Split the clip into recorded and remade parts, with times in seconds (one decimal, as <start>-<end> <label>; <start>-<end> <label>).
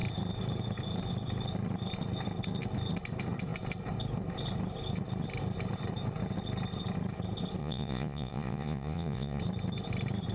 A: 0.0-7.6 recorded; 7.6-9.4 remade; 9.4-10.3 recorded